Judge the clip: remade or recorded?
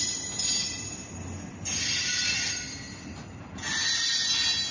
recorded